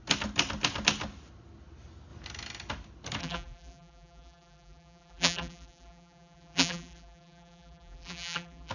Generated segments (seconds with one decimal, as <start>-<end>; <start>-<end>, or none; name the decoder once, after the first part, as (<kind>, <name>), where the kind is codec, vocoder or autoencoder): 3.2-8.7 (vocoder, BigVGAN v2)